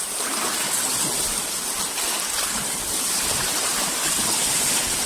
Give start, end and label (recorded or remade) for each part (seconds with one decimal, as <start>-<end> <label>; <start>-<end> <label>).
0.0-3.5 recorded; 3.5-5.1 remade